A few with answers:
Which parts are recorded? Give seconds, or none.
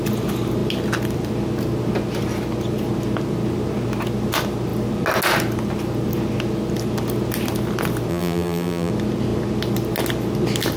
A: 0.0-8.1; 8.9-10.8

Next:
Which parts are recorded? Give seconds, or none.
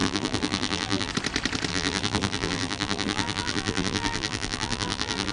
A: 1.1-1.7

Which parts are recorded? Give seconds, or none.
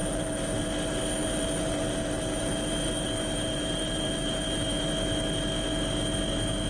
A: 0.6-1.2; 4.8-6.7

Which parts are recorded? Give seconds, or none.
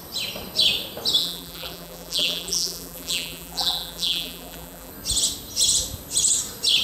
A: 0.0-1.2; 4.9-6.8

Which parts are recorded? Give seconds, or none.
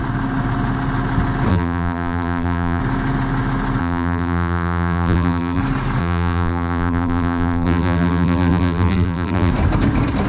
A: 0.0-1.5; 2.8-3.8; 5.6-6.0; 9.5-10.3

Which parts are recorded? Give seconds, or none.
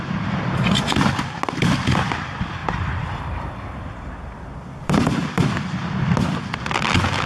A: 0.0-2.6; 4.1-4.8; 5.4-7.3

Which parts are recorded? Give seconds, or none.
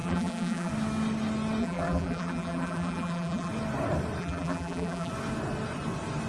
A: 0.7-1.6; 3.5-4.2; 5.1-6.3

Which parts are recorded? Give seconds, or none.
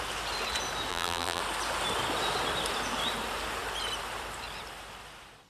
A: 0.0-0.9; 1.4-5.5